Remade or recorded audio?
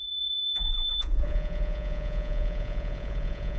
remade